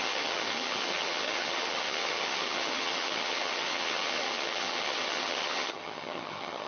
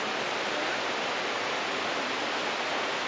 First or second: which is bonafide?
second